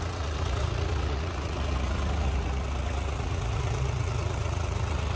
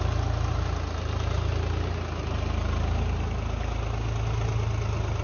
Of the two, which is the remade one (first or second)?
first